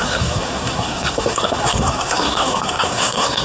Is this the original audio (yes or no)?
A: no